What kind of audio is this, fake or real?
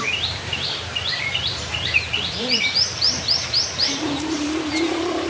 fake